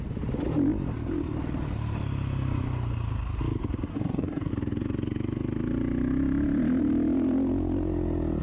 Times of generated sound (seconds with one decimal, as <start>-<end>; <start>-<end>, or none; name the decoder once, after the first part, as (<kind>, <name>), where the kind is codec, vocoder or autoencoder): 3.9-4.5 (codec, SNAC)